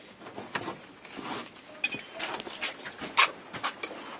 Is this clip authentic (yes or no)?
yes